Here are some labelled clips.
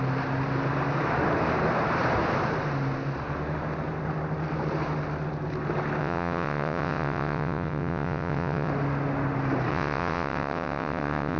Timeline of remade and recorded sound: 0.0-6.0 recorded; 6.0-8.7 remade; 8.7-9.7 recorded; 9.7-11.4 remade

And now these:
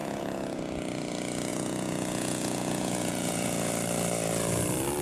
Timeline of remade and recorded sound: 0.0-0.6 remade; 0.6-1.5 recorded; 1.5-3.7 remade; 3.7-5.0 recorded

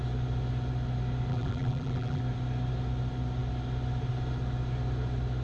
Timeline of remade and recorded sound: 0.0-1.3 recorded; 1.3-2.2 remade; 2.2-5.4 recorded

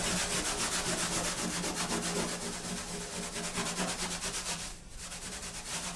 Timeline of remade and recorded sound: 0.0-3.5 recorded; 3.5-6.0 remade